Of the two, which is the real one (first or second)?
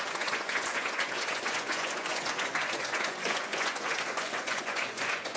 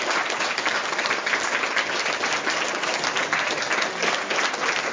second